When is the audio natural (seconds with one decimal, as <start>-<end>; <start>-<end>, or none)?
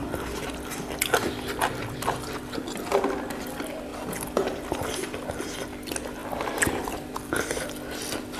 0.0-6.2; 7.5-8.4